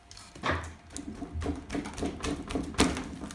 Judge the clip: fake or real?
real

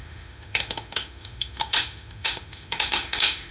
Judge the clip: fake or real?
fake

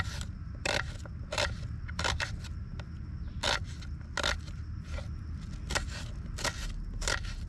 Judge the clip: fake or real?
real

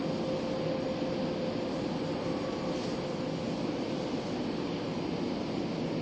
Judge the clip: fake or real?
real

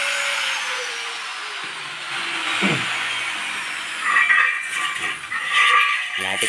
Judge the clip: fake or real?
fake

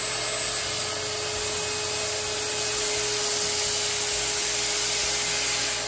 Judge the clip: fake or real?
real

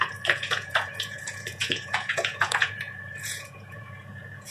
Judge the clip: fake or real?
fake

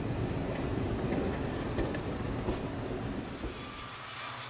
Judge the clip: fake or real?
real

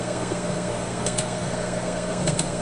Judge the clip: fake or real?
fake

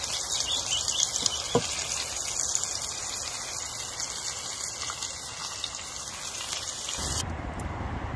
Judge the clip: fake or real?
real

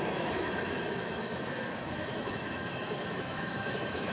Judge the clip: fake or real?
fake